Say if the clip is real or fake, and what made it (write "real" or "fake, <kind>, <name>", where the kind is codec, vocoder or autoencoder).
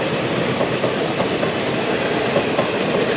real